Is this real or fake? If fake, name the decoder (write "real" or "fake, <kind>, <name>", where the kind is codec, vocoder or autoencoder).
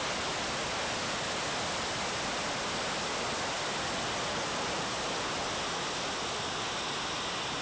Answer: real